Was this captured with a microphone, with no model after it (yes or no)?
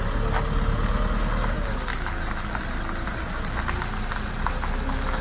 yes